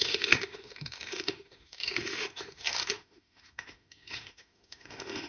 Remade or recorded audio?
remade